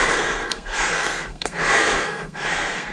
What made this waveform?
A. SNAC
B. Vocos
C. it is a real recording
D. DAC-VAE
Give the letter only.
A